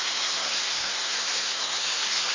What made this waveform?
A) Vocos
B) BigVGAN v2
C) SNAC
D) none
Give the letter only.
C